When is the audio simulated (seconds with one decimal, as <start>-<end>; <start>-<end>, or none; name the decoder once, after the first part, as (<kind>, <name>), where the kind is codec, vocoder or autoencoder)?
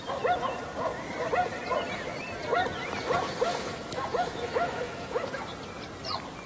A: 3.5-5.3 (autoencoder, DAC-VAE)